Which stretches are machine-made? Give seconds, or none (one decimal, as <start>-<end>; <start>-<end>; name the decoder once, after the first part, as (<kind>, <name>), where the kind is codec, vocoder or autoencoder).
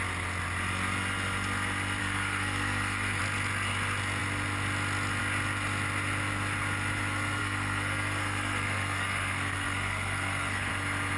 2.0-3.2 (codec, SNAC); 7.4-10.7